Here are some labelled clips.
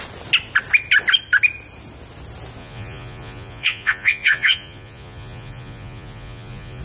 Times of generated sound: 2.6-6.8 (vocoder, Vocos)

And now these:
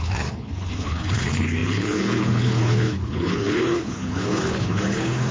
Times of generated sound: 0.0-5.3 (codec, HILCodec)